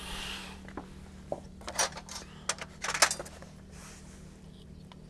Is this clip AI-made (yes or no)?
no